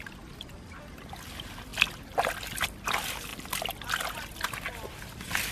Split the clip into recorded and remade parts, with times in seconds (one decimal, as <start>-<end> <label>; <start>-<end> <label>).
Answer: 0.0-5.5 recorded